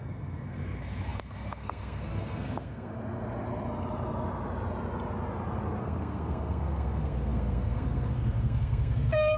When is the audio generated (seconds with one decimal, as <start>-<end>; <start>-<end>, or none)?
0.0-2.9; 5.8-9.4